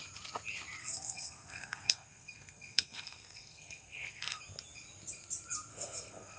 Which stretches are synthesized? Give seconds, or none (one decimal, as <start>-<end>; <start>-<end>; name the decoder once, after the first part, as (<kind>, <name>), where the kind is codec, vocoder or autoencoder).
0.8-4.4 (codec, SNAC); 5.7-6.4